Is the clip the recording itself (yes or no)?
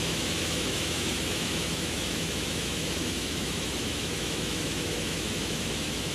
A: no